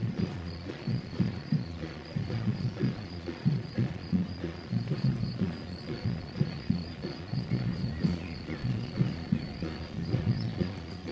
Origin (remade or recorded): remade